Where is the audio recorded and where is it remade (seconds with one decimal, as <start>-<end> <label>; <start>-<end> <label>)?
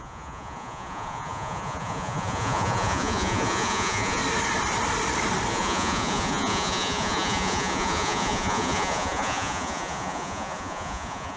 0.0-4.2 remade; 4.2-5.5 recorded; 5.5-11.4 remade